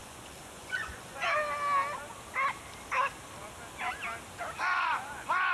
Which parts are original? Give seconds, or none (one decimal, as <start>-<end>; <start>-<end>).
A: 1.3-4.6